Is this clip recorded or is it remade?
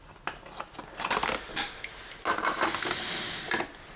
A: recorded